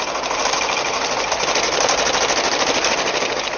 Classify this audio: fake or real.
real